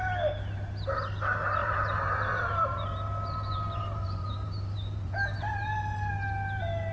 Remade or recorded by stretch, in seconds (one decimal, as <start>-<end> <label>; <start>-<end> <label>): 0.0-1.6 recorded; 1.6-5.7 remade; 5.7-6.9 recorded